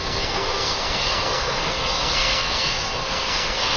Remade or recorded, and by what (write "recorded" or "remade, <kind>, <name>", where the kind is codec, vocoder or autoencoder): remade, codec, SNAC